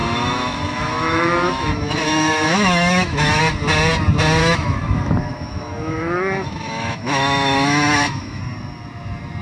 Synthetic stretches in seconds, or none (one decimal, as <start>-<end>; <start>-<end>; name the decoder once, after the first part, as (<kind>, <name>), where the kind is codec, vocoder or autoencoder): 0.0-3.4 (autoencoder, DAC-VAE); 4.4-8.4